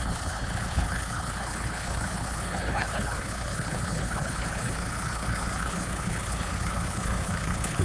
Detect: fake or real fake